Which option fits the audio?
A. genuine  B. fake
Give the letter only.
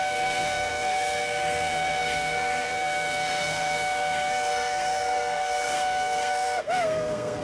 B